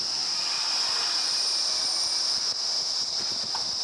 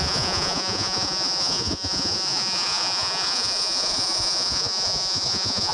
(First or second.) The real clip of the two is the first